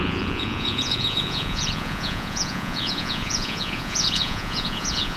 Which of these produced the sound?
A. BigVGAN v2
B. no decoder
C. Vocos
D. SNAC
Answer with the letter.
C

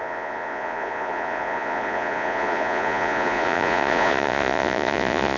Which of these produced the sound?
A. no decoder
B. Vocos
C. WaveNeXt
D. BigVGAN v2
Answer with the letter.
B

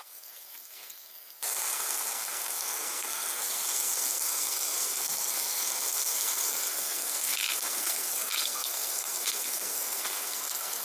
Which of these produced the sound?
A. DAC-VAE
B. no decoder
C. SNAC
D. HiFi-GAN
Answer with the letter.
C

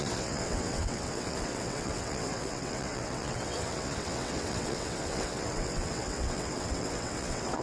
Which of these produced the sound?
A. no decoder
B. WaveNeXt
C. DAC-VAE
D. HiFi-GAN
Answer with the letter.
B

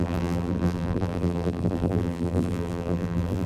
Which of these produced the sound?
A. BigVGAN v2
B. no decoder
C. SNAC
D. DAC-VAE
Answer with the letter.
A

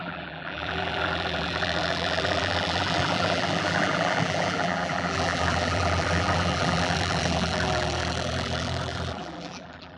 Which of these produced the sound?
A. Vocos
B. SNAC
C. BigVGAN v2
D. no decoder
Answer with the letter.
C